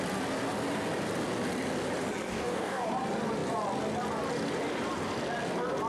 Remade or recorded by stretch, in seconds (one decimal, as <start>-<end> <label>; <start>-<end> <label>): 0.0-2.3 recorded; 2.3-2.9 remade; 2.9-5.9 recorded